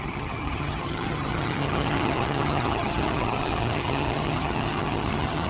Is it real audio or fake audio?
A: fake